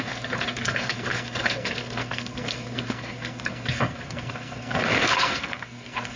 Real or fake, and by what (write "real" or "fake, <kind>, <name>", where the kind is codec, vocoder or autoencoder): fake, codec, SNAC